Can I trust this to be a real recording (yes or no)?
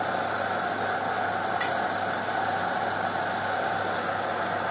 yes